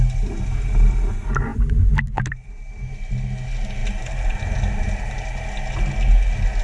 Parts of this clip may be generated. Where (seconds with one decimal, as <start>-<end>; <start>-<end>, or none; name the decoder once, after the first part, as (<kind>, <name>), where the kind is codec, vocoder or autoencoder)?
1.5-2.9 (vocoder, BigVGAN v2)